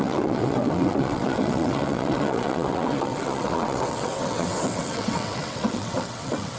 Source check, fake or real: fake